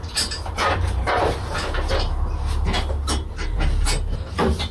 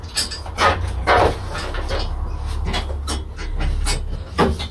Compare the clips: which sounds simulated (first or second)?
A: first